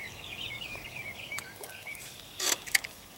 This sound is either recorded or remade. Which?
remade